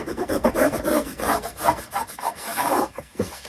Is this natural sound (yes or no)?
no